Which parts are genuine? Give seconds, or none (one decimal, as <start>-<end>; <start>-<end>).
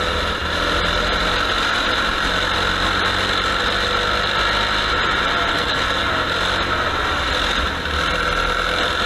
0.0-5.5; 6.1-9.1